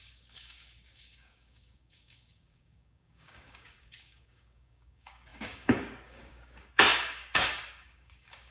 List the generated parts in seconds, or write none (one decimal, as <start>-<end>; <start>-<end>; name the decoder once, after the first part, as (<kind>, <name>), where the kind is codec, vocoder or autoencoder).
0.0-8.5 (codec, DAC)